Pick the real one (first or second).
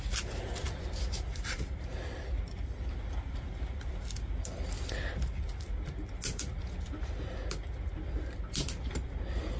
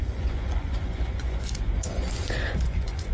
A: first